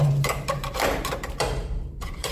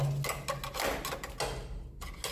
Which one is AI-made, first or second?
first